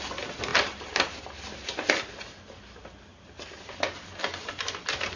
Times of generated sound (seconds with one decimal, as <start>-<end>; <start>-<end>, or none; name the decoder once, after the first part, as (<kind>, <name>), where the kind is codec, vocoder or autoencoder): none